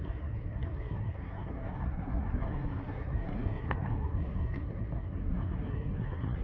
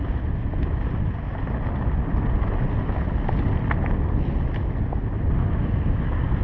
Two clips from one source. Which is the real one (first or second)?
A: second